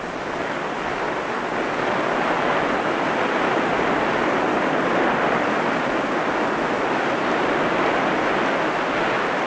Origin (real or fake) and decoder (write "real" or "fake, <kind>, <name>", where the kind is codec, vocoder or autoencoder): real